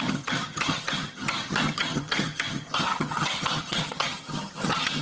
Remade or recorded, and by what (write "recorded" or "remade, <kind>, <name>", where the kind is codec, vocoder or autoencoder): remade, vocoder, HiFi-GAN